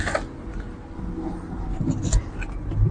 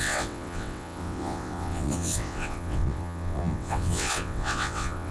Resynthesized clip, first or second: second